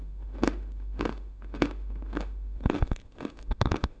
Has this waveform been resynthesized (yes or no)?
yes